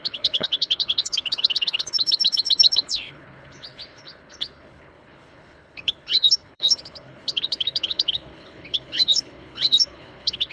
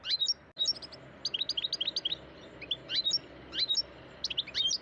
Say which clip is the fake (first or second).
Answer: first